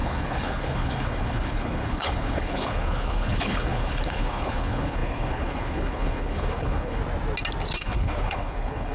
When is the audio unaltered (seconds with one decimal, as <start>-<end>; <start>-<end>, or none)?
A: 7.0-7.8